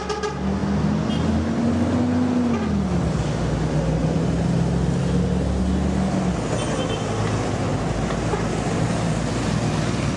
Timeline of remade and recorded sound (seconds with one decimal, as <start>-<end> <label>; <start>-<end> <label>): 0.0-10.2 recorded